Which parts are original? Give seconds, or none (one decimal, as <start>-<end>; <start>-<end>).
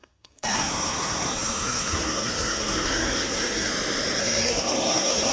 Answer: 3.7-4.2